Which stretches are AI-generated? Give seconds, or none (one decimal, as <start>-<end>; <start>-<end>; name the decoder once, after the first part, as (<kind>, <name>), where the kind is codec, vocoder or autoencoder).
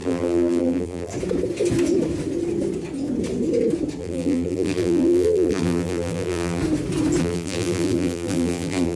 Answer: 0.0-1.1 (vocoder, BigVGAN v2); 4.0-6.6; 7.2-9.0